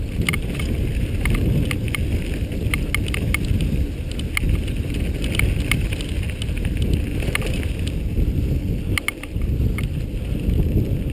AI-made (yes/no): no